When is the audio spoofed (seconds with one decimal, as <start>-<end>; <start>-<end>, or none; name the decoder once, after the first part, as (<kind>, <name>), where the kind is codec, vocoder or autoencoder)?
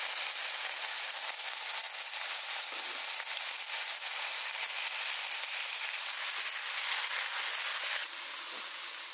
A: none